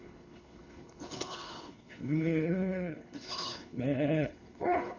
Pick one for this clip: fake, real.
fake